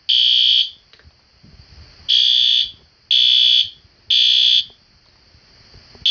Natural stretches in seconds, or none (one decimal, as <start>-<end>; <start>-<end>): 0.0-6.1